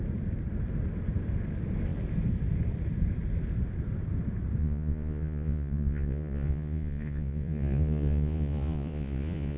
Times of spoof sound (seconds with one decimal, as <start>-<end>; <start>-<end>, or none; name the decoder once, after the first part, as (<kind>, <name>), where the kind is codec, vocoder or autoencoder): 4.6-9.6 (vocoder, Vocos)